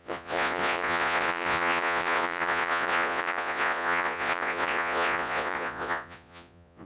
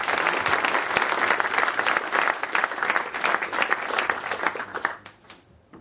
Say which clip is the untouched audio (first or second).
second